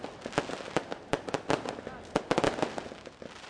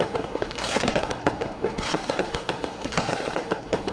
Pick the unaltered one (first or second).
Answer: first